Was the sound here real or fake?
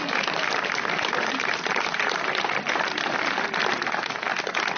real